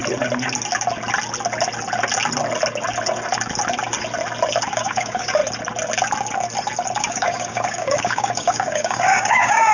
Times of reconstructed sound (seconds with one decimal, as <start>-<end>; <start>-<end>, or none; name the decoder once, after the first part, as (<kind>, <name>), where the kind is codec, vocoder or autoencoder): 4.7-5.4 (codec, DAC); 7.0-9.7